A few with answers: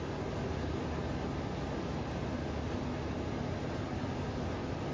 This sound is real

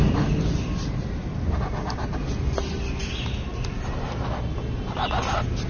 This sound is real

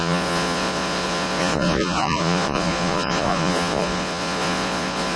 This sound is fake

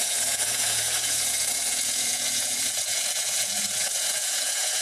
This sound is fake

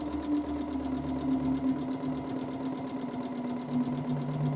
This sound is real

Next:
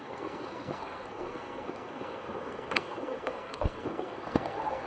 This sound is fake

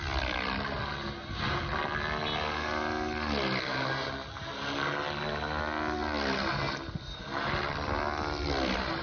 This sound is real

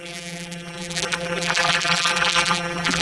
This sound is fake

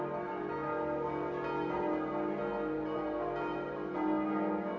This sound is real